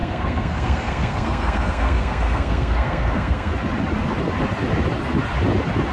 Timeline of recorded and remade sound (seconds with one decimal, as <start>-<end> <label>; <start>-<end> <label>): 0.0-3.5 remade; 3.5-5.9 recorded